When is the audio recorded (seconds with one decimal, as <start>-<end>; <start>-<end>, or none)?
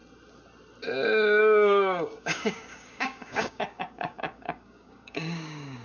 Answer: 0.0-1.4